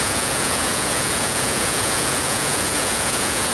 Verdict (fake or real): fake